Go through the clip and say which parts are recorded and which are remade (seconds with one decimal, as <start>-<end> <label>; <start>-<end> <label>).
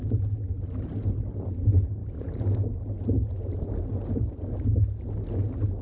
0.0-5.8 recorded